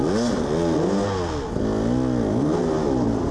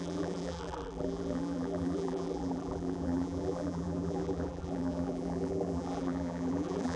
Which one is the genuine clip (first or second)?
first